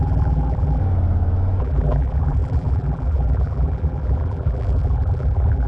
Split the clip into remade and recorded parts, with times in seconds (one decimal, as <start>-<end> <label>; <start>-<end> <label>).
0.0-0.8 remade; 0.8-1.6 recorded; 1.6-5.7 remade